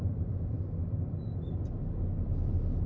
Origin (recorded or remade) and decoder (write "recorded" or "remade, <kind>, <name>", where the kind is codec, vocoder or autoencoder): recorded